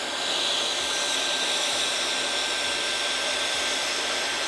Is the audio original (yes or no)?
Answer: yes